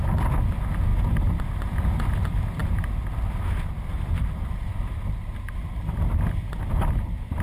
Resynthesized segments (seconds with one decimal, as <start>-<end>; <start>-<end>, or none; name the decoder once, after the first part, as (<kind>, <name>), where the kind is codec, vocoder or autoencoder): none